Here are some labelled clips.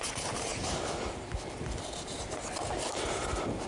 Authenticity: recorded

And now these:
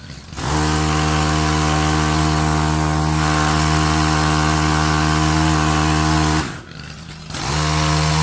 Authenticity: recorded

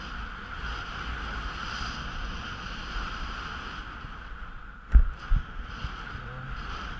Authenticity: recorded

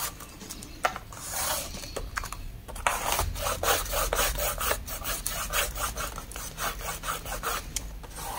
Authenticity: recorded